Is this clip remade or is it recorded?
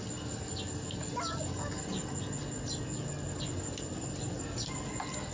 recorded